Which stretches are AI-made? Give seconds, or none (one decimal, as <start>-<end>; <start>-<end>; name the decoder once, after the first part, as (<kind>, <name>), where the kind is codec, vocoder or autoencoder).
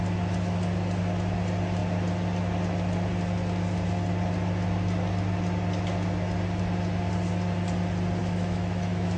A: 8.2-9.2 (autoencoder, DAC-VAE)